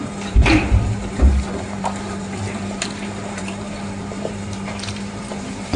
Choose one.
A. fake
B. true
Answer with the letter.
A